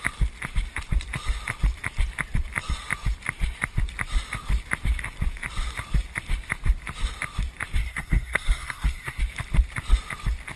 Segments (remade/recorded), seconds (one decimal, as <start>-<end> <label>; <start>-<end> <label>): 0.0-7.8 recorded; 7.8-9.2 remade; 9.2-10.6 recorded